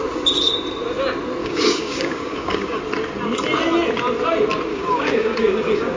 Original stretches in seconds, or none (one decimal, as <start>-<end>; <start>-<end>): 0.0-1.4; 2.8-4.7